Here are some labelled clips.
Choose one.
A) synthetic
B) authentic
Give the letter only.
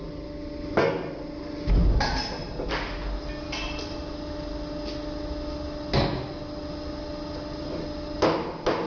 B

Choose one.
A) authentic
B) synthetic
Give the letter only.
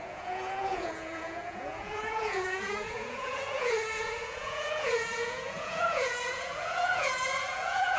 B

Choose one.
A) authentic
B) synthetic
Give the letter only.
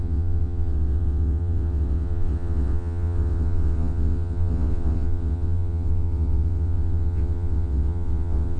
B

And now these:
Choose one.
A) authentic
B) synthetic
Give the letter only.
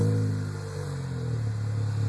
A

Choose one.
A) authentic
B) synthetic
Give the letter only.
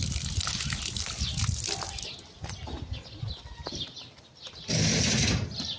A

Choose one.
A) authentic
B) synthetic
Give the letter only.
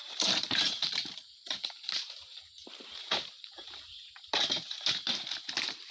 B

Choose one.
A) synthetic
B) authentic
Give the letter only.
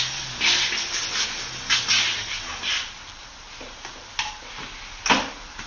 B